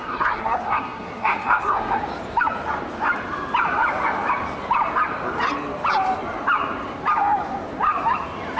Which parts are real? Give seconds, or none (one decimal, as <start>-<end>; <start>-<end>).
2.0-8.6